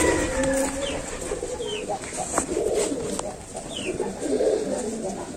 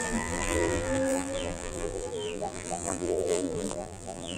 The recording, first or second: first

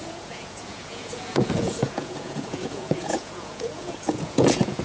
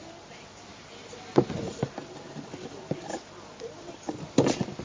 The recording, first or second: second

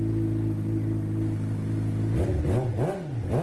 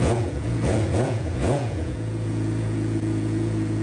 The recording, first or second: first